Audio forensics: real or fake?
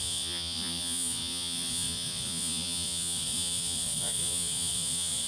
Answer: fake